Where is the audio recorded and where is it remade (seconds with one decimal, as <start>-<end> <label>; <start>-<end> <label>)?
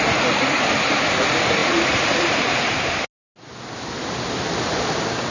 0.0-5.3 recorded